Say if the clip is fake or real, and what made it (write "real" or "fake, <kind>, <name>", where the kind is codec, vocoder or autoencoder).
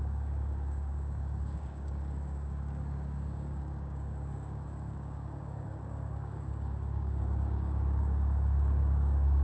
fake, codec, DAC